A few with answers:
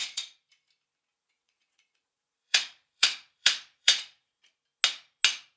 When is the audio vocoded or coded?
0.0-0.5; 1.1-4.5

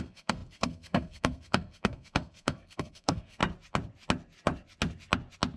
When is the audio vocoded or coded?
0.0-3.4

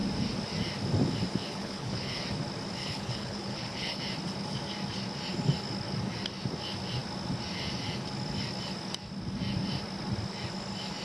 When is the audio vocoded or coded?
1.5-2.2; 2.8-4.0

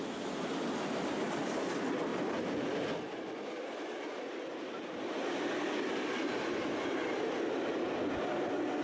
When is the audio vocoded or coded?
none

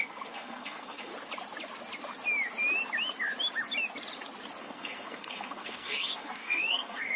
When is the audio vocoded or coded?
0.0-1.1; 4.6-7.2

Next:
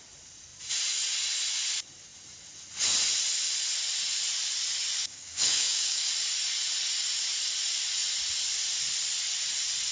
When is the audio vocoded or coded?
5.0-6.1